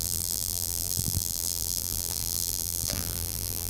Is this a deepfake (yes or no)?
yes